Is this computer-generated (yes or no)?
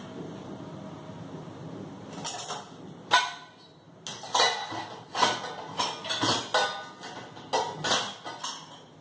no